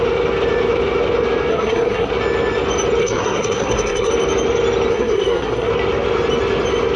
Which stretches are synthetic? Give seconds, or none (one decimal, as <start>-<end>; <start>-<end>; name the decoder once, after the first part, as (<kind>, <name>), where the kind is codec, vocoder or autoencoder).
1.5-2.1 (codec, SNAC); 3.0-4.1; 4.9-5.7